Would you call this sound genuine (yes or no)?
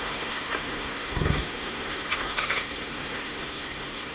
no